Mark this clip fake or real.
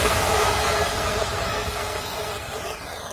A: fake